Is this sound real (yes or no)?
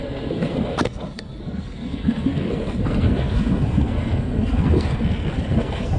no